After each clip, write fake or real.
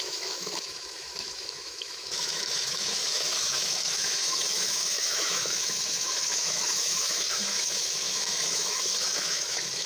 fake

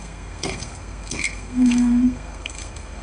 fake